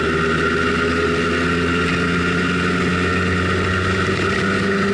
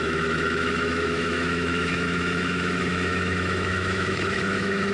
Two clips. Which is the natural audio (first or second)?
first